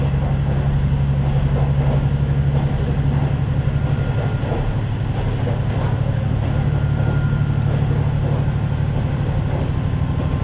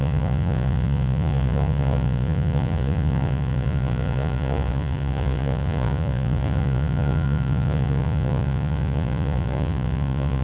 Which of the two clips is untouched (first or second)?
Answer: first